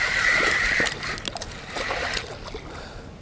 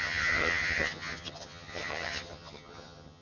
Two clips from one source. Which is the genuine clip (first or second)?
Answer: first